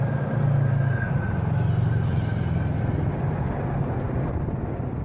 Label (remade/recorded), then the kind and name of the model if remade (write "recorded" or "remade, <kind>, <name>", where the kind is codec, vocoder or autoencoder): recorded